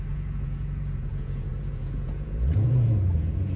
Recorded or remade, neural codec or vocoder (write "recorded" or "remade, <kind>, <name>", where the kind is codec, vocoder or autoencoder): remade, vocoder, Vocos